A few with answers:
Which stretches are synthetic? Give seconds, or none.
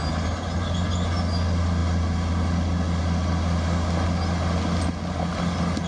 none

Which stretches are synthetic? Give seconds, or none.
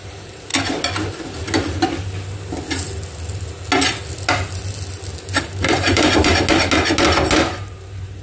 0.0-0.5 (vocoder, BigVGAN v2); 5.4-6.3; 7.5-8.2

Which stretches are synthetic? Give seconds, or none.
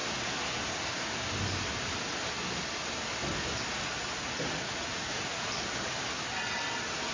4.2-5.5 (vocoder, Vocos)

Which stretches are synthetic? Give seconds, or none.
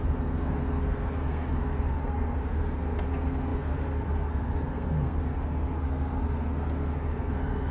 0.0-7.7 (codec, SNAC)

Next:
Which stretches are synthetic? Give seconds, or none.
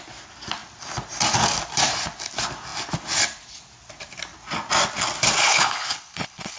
5.4-6.6 (codec, HILCodec)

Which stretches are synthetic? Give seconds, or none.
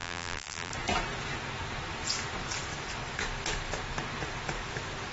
0.0-0.7 (vocoder, BigVGAN v2)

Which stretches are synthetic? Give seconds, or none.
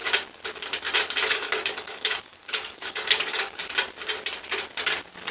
1.3-3.6 (codec, DAC)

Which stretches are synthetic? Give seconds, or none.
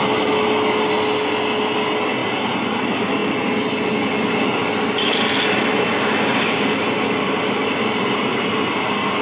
2.2-2.8 (vocoder, BigVGAN v2); 6.3-6.9; 8.3-9.2